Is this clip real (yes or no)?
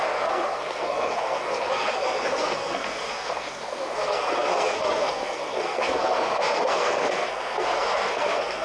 no